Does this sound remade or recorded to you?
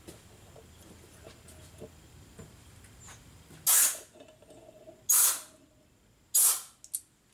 recorded